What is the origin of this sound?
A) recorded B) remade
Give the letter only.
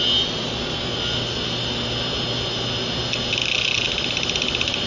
A